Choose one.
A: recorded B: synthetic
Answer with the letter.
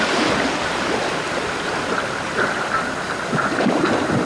A